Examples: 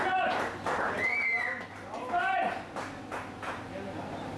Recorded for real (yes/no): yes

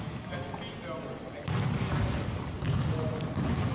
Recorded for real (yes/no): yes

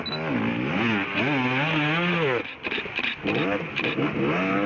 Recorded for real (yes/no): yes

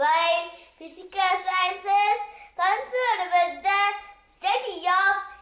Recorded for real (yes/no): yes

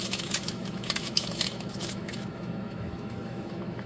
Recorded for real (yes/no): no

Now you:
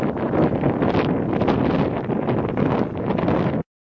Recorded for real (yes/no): yes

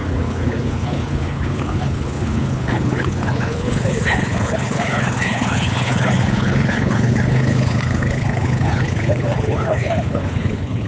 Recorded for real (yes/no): no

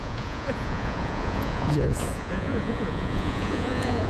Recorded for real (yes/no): no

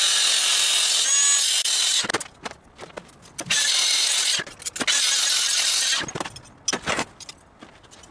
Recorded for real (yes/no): yes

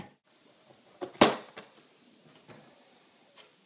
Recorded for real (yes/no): yes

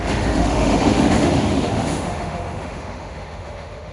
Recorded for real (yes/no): no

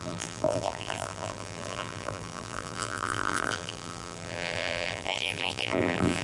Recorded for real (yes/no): no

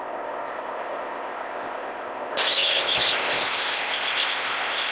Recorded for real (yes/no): no